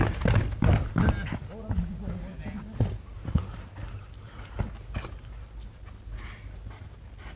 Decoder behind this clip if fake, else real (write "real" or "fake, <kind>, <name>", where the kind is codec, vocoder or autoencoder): real